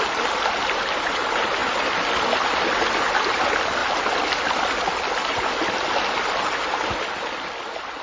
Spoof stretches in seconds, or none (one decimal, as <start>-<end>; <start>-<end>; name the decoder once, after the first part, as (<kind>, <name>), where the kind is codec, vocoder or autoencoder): none